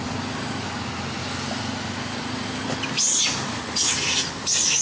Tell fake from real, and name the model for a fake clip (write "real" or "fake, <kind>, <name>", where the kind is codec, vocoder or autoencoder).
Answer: real